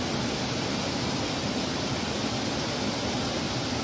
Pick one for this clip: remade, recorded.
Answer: recorded